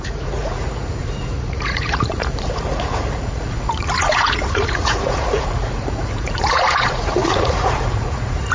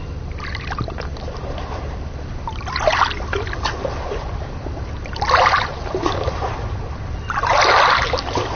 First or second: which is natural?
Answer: second